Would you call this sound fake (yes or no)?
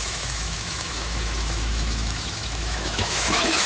yes